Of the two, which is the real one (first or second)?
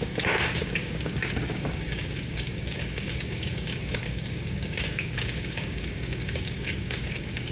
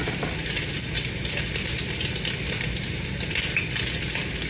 second